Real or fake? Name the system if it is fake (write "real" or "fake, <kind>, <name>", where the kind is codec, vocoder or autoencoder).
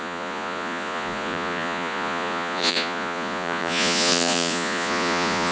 fake, vocoder, Vocos